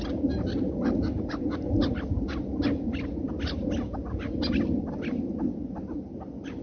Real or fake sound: real